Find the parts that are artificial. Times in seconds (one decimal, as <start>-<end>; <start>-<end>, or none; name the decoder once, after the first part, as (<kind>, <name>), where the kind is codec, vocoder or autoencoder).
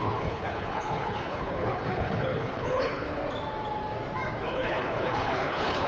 0.0-3.2 (codec, HILCodec); 4.4-5.9